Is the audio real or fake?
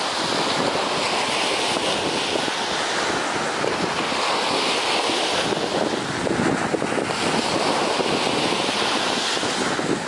real